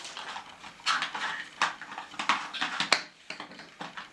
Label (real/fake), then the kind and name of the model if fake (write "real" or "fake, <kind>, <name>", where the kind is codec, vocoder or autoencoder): real